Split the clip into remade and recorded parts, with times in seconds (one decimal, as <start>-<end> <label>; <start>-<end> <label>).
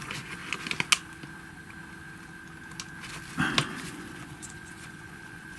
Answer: 0.0-0.4 remade; 0.4-3.7 recorded; 3.7-5.6 remade